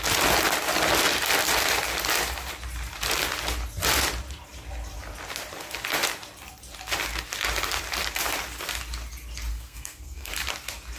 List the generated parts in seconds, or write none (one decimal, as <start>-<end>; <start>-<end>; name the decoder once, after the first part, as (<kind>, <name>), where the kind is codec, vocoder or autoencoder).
9.5-10.3 (codec, SNAC)

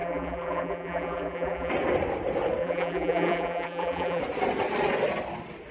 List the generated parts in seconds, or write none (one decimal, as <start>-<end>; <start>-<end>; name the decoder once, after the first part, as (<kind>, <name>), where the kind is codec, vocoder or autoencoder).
0.0-1.7 (vocoder, BigVGAN v2); 2.6-4.2

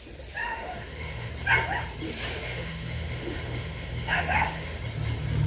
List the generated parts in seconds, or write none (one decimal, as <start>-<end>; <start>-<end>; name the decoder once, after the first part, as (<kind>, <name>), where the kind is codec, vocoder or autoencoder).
0.4-1.3 (autoencoder, DAC-VAE); 2.5-4.8

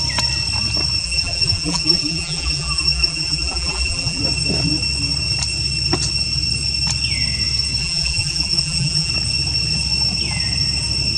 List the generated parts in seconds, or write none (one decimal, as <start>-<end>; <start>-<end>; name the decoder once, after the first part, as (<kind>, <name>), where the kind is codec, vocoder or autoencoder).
1.0-4.2 (vocoder, BigVGAN v2); 7.8-9.1